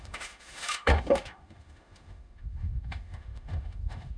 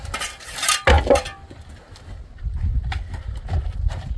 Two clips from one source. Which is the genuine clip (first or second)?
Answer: second